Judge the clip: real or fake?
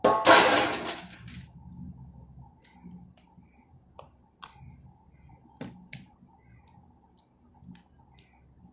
real